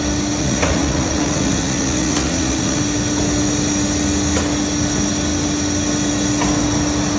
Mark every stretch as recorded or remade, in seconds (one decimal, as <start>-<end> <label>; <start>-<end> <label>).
0.0-0.4 recorded; 0.4-2.8 remade; 2.8-7.2 recorded